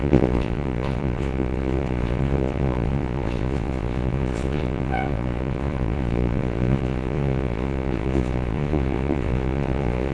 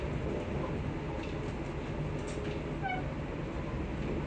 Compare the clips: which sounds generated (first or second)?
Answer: first